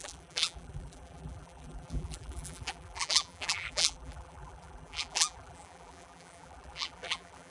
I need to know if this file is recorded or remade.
remade